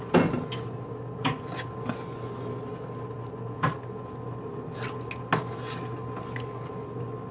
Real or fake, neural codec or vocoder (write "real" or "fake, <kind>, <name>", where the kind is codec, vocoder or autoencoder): real